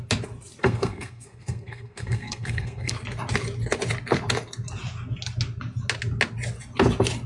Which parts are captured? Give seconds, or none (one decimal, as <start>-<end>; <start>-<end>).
0.0-0.6; 2.9-7.3

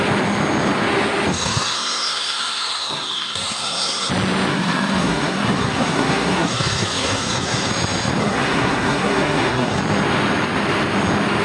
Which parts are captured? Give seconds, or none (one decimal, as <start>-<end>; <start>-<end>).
0.0-1.3; 4.1-4.5; 7.7-8.2; 9.8-11.4